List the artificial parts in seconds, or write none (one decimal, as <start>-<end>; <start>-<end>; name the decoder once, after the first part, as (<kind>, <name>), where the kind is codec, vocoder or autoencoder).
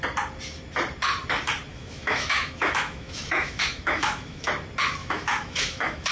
1.7-4.5 (autoencoder, DAC-VAE); 5.0-6.1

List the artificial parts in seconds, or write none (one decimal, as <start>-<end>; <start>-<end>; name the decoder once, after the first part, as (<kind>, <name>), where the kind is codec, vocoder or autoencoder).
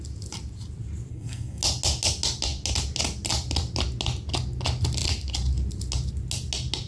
1.1-1.6 (codec, SNAC)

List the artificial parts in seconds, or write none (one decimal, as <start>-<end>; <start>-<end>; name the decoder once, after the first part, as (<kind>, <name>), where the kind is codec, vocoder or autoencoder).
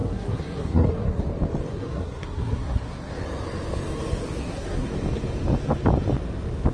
0.0-1.2 (codec, SNAC); 1.7-3.1; 4.4-4.9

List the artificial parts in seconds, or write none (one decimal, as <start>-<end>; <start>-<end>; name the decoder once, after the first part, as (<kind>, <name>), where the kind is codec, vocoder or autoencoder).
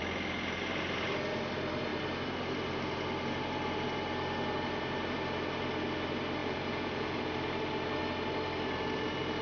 6.4-7.3 (vocoder, Vocos)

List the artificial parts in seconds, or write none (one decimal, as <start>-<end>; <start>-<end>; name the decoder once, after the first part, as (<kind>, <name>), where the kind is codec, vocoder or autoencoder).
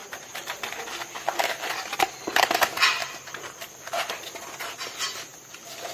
0.0-0.6 (vocoder, BigVGAN v2); 1.9-2.5; 3.0-3.7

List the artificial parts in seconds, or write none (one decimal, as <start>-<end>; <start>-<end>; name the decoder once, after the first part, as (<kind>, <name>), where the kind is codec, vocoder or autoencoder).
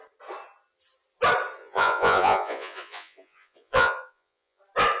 1.6-4.6 (vocoder, Vocos)